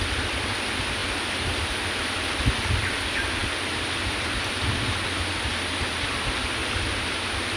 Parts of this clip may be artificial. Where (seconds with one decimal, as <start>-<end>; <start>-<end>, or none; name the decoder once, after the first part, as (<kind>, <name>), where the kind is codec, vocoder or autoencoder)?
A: 1.0-2.6 (vocoder, BigVGAN v2); 3.4-5.5